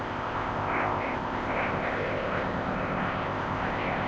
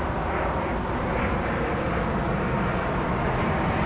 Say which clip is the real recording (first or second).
second